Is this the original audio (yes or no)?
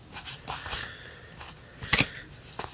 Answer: yes